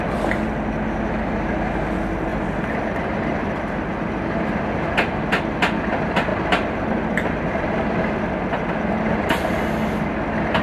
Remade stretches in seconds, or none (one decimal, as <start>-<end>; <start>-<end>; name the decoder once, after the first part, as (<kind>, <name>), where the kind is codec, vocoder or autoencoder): 2.3-3.6 (vocoder, BigVGAN v2); 6.3-8.1